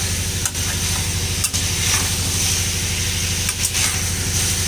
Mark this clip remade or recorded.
recorded